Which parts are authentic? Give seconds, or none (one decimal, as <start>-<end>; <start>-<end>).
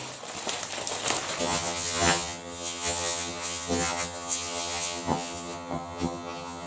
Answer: 0.0-1.4